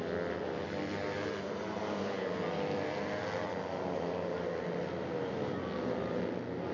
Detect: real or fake real